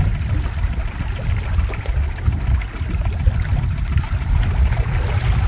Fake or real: real